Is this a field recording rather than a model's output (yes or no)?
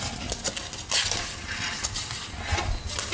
yes